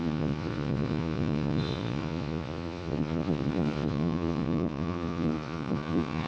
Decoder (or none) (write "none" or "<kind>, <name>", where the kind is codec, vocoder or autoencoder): vocoder, Vocos